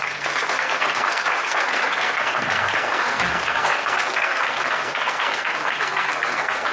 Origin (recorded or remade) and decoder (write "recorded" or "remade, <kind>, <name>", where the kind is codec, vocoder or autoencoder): remade, codec, SNAC